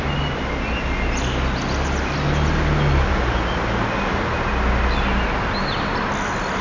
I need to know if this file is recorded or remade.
recorded